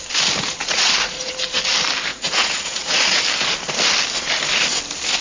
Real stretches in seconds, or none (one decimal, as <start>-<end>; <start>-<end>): 0.0-0.6; 1.3-2.1; 3.2-5.2